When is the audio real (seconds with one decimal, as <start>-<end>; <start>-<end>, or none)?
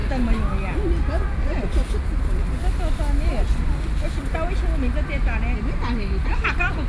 0.0-6.9